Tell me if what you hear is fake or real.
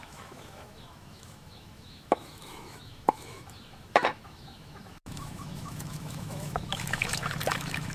fake